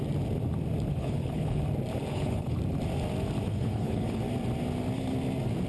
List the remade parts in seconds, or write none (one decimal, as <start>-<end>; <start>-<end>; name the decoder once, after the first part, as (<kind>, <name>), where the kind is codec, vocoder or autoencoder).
0.9-1.6 (codec, HILCodec); 2.1-2.6; 3.5-4.2